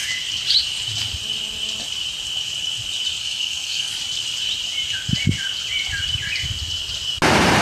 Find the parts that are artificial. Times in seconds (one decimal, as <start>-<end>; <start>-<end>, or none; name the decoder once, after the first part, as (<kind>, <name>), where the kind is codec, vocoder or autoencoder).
3.2-3.9 (codec, SNAC)